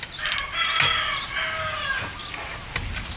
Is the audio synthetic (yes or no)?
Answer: no